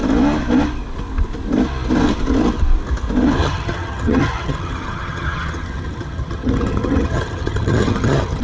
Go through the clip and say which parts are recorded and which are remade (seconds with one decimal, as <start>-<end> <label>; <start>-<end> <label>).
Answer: 0.0-3.4 recorded; 3.4-8.4 remade